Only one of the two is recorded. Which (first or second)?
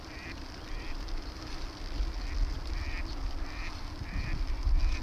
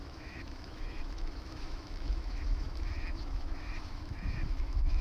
first